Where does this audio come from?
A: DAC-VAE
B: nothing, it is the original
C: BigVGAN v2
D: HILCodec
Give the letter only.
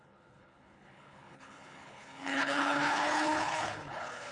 D